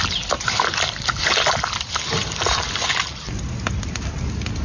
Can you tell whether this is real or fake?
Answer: real